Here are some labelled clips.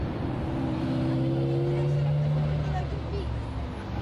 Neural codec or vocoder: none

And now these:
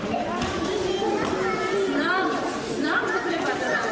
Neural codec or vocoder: none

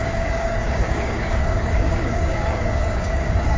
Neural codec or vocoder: codec, DAC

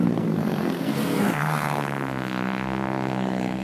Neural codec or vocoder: codec, SNAC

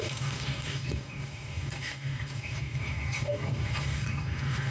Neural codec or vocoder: codec, DAC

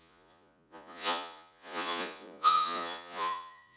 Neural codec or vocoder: vocoder, Vocos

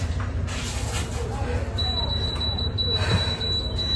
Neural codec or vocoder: none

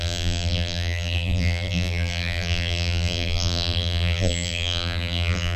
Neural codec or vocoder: vocoder, BigVGAN v2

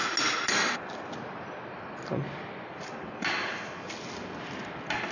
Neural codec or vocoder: none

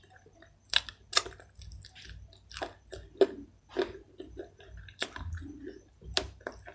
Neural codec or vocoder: none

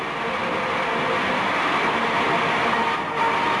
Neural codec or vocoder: none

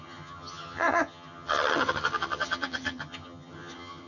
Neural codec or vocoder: vocoder, HiFi-GAN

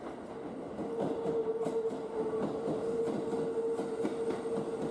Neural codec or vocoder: none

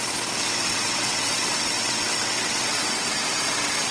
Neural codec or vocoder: vocoder, WaveNeXt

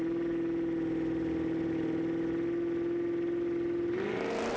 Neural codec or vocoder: none